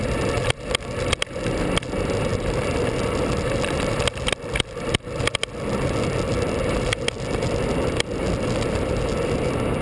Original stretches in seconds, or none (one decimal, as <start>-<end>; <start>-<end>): 0.0-9.8